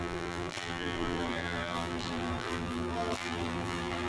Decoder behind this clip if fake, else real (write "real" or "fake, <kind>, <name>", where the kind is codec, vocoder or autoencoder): fake, vocoder, BigVGAN v2